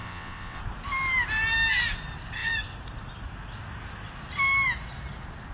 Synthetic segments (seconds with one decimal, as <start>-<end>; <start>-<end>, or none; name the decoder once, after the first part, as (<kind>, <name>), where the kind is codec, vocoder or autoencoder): 0.0-0.6 (vocoder, WaveNeXt)